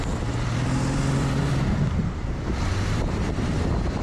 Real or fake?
fake